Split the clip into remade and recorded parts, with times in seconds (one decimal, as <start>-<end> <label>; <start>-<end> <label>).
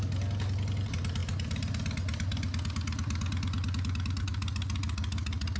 0.0-5.6 recorded